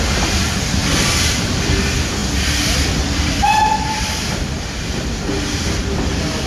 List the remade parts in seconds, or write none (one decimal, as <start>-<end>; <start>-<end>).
0.8-1.7